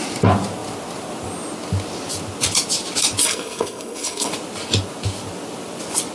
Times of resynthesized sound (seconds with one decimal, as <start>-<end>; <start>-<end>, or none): 3.2-4.3